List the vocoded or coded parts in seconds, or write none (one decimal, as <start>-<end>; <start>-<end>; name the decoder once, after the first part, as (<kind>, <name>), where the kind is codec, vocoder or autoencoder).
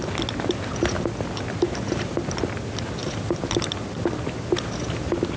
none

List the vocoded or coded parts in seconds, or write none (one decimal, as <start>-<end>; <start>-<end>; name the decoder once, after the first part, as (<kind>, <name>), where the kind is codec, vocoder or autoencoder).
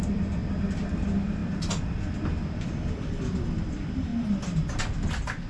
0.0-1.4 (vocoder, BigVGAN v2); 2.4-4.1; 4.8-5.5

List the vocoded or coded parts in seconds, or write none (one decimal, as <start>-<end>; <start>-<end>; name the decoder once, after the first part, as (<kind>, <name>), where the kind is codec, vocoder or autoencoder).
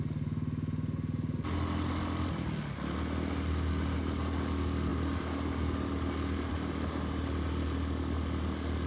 none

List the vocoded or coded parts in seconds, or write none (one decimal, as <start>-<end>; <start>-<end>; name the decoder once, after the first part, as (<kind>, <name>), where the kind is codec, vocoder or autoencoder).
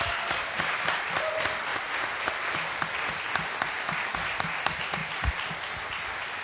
1.7-2.2 (vocoder, BigVGAN v2); 5.0-5.5